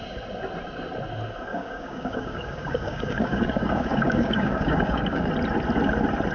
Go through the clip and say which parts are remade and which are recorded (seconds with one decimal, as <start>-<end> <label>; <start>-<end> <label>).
0.0-1.5 recorded; 1.5-5.3 remade; 5.3-6.3 recorded